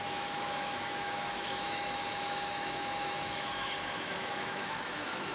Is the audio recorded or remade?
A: remade